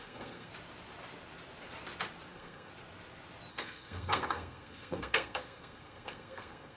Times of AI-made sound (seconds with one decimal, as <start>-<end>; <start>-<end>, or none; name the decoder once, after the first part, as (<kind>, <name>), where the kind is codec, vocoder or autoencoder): 0.0-0.5 (codec, SNAC); 2.3-2.7; 3.5-6.8